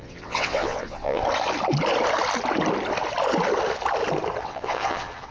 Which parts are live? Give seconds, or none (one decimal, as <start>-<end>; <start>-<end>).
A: 1.2-4.4